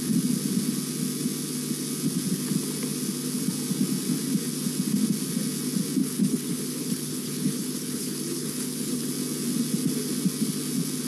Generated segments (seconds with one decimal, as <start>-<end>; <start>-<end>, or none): 6.0-9.1